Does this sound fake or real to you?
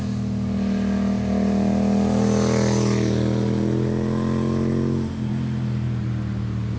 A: real